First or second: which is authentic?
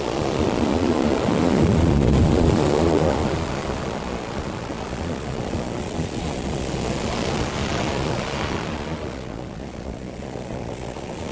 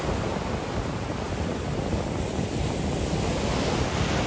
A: second